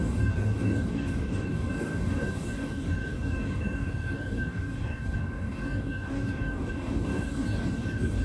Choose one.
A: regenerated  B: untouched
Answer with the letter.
A